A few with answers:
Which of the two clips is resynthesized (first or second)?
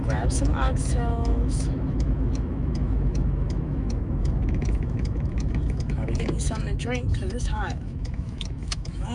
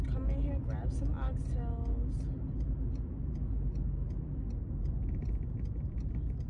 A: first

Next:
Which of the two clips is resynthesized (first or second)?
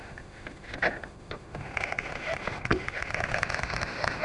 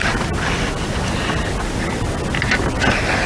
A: first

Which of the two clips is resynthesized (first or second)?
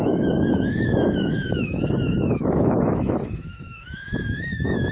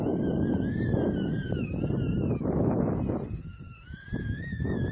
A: first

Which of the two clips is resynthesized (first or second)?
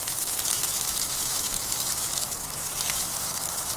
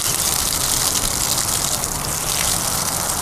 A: first